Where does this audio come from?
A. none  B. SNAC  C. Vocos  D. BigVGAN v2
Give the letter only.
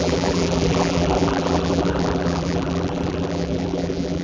D